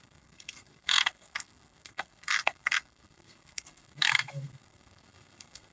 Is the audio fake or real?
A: fake